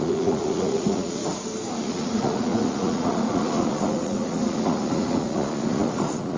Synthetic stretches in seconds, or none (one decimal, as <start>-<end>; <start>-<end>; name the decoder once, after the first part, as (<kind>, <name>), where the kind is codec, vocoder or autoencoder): 0.0-1.2 (vocoder, Vocos); 1.8-6.4